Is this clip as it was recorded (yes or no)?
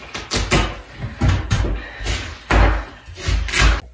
yes